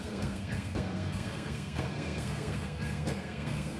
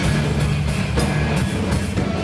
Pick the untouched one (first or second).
second